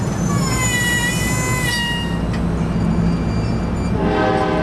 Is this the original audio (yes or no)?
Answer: yes